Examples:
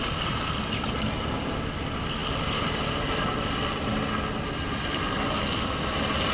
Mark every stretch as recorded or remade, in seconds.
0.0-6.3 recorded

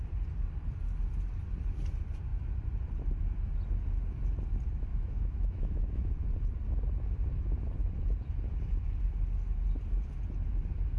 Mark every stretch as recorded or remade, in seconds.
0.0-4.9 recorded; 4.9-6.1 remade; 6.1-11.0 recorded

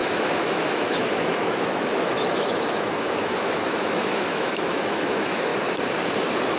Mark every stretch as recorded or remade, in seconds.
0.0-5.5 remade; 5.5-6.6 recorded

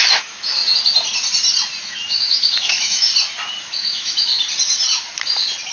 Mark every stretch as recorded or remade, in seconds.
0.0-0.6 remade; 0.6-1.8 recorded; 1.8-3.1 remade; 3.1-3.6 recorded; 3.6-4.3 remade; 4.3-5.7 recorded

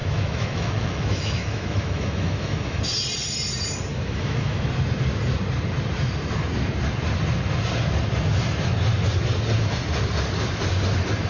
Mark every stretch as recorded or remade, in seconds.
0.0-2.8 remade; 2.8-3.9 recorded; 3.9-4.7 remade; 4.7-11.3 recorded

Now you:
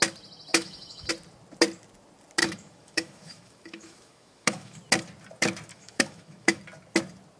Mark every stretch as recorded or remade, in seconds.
0.0-0.5 recorded; 0.5-1.1 remade; 1.1-2.4 recorded; 2.4-4.8 remade; 4.8-5.7 recorded; 5.7-6.6 remade; 6.6-7.4 recorded

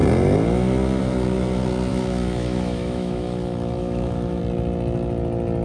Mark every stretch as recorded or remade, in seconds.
0.0-1.9 recorded; 1.9-4.4 remade; 4.4-5.6 recorded

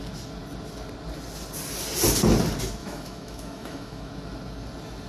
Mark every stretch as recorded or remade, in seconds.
0.0-2.8 recorded; 2.8-4.1 remade; 4.1-5.1 recorded